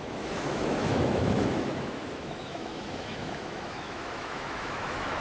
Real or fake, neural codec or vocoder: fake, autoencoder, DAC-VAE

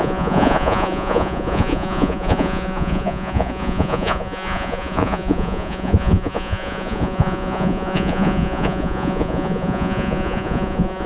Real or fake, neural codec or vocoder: fake, vocoder, Vocos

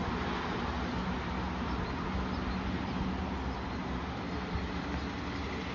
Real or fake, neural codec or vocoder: real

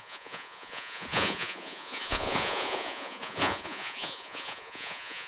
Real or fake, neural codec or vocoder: fake, vocoder, Vocos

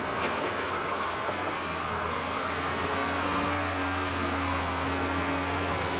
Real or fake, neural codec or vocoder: fake, codec, SNAC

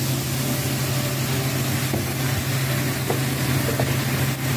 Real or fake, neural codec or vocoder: real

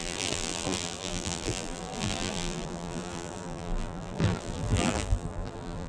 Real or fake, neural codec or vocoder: fake, vocoder, BigVGAN v2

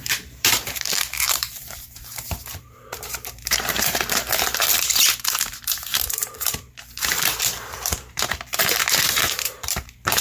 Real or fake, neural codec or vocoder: fake, vocoder, BigVGAN v2